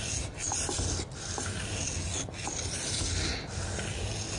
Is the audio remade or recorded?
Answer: recorded